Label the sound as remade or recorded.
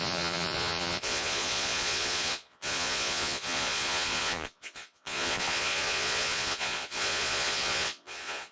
remade